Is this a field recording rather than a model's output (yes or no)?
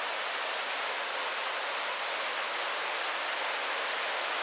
yes